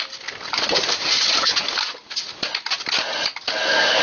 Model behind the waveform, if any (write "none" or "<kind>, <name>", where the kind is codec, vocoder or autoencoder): none